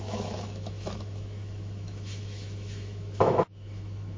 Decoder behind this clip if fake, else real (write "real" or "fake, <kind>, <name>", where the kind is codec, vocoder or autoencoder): fake, autoencoder, DAC-VAE